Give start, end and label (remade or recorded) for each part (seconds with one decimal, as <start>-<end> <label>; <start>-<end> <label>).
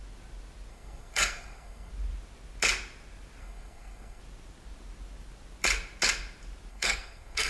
0.0-0.7 recorded; 0.7-1.9 remade; 1.9-3.4 recorded; 3.4-4.2 remade; 4.2-6.7 recorded; 6.7-7.5 remade